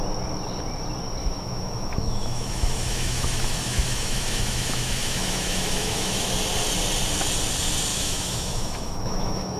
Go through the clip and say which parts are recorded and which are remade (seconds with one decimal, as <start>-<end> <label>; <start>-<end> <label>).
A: 0.0-1.2 recorded; 1.2-6.3 remade; 6.3-7.9 recorded; 7.9-9.6 remade